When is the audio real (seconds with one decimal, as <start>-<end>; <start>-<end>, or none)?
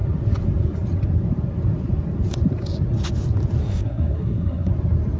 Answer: 0.0-3.6; 4.7-5.2